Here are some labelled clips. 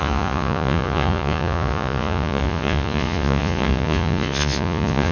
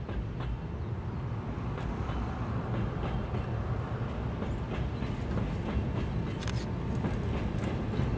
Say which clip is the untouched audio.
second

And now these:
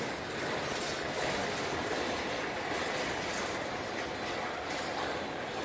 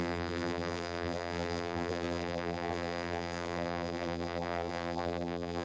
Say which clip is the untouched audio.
first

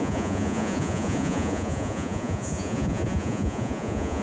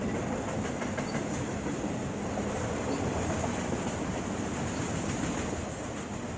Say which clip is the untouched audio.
second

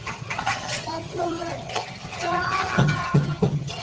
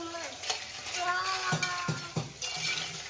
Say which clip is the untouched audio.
second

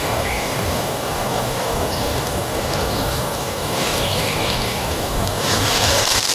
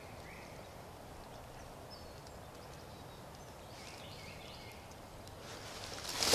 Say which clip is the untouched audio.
second